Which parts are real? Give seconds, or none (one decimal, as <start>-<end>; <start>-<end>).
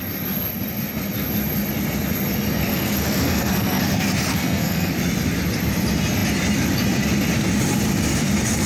0.0-2.7; 3.8-4.3; 4.9-8.7